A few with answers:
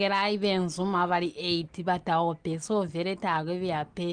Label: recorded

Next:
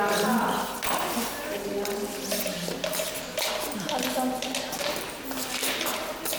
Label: recorded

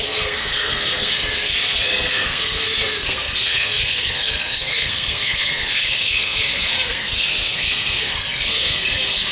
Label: remade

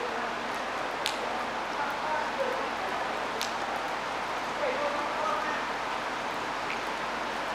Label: recorded